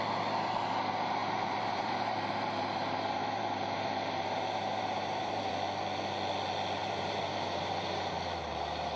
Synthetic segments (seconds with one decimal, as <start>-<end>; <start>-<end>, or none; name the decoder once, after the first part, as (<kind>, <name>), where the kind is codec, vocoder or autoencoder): 1.2-5.5 (vocoder, BigVGAN v2); 6.8-9.0